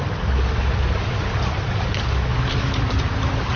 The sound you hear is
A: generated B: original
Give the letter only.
A